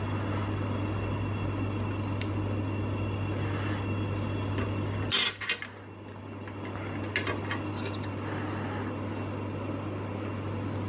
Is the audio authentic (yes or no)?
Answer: yes